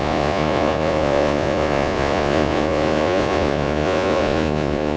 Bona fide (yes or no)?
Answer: no